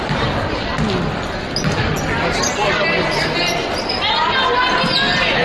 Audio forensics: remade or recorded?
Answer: recorded